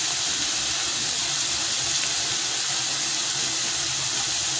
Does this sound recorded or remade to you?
recorded